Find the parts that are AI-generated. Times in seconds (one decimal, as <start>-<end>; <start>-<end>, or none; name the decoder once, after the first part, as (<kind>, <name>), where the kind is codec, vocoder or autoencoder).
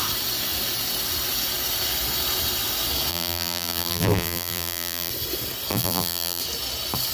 3.1-5.1 (vocoder, BigVGAN v2); 5.7-6.4